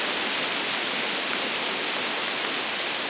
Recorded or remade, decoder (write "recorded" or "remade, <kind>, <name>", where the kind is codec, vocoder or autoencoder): recorded